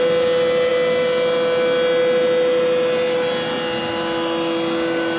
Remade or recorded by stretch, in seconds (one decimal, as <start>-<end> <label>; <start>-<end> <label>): 0.0-5.2 recorded